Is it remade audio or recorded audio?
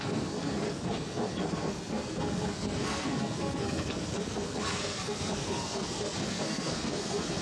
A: remade